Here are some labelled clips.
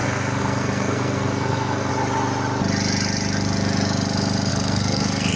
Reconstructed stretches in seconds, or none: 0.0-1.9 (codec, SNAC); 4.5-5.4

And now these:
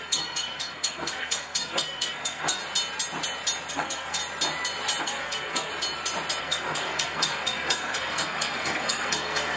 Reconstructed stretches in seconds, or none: 0.0-2.6 (codec, SNAC); 3.7-4.2; 5.0-5.7; 6.4-9.6

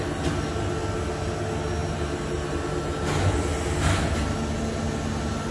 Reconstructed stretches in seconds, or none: none

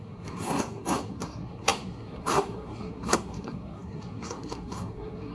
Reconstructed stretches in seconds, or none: 0.0-5.3 (codec, SNAC)